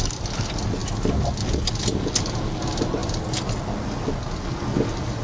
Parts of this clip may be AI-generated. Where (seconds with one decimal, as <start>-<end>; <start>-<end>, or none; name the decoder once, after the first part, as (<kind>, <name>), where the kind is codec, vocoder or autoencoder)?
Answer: none